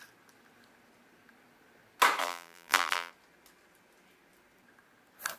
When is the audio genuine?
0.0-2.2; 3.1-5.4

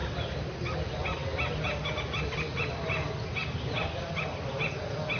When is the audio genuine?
0.0-5.2

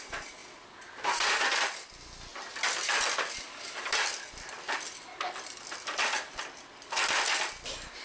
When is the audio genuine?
0.0-8.0

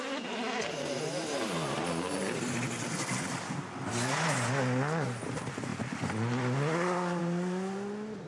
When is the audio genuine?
0.0-8.3

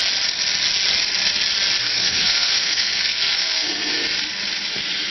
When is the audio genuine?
0.0-1.8; 4.0-5.1

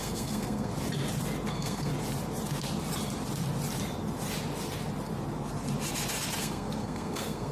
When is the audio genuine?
0.7-1.5; 1.9-6.4

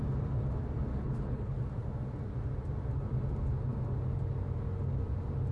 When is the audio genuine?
0.0-0.9; 1.6-5.5